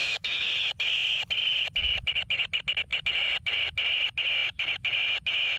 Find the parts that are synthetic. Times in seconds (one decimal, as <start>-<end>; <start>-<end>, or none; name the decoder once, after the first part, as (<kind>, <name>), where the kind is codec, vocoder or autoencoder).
0.0-0.5 (autoencoder, DAC-VAE)